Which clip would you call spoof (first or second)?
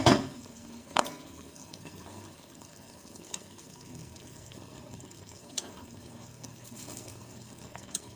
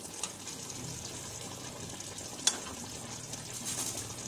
first